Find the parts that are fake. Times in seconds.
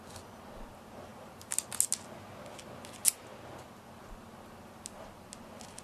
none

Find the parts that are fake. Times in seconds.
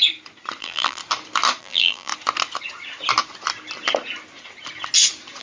0.6-1.0 (vocoder, BigVGAN v2); 1.6-2.1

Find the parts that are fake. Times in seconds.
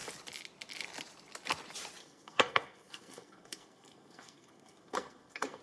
2.0-5.6 (codec, SNAC)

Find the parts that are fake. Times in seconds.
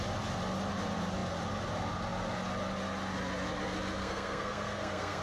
4.0-5.2 (codec, SNAC)